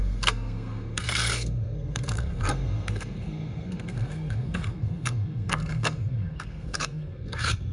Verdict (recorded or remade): remade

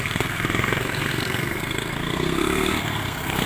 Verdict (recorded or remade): remade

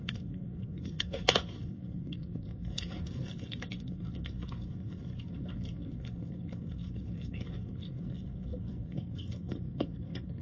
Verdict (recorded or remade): remade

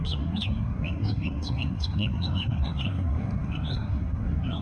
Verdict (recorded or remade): remade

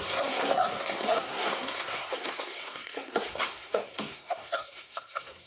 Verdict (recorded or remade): remade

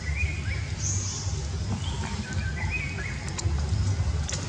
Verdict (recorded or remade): recorded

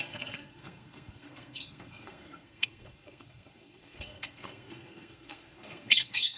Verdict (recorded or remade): remade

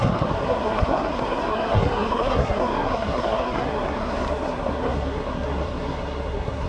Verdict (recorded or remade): remade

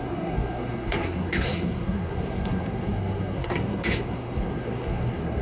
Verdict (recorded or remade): remade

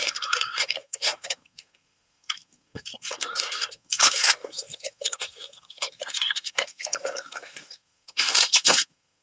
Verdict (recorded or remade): remade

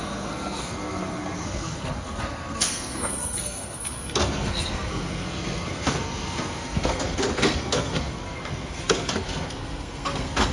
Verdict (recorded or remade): remade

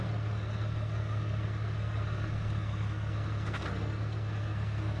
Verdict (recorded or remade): remade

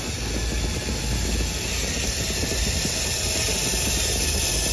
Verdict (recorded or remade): recorded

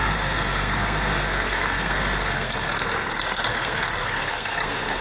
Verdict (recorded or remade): remade